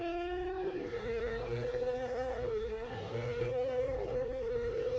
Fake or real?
fake